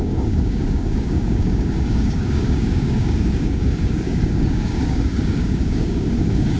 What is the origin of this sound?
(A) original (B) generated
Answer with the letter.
B